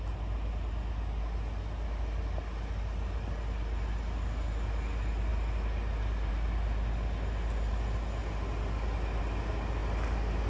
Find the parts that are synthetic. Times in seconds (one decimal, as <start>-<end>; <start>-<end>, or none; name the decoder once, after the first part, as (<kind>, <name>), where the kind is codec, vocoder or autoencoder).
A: none